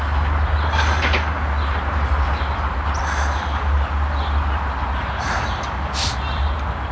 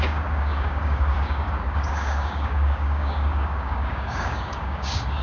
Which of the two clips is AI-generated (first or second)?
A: second